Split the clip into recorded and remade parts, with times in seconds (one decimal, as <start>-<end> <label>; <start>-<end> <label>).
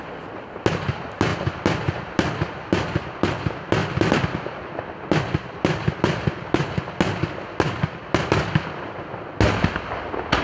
0.0-10.4 recorded